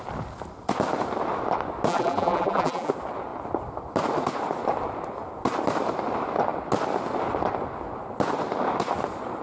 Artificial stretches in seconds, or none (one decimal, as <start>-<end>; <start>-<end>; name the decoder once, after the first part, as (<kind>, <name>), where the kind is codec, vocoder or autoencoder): 1.9-2.9 (vocoder, BigVGAN v2)